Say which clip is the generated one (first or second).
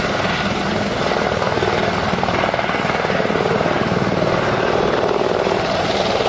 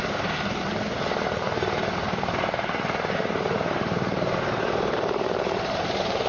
second